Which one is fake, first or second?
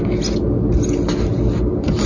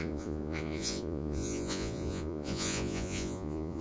second